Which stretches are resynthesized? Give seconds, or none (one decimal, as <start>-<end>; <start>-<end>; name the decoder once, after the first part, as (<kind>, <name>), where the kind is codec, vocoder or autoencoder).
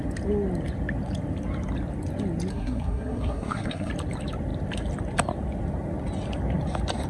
2.5-3.9 (codec, SNAC)